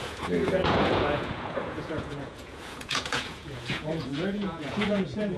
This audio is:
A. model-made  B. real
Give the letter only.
A